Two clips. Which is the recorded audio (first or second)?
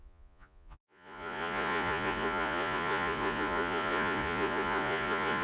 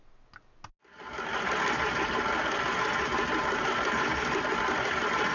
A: second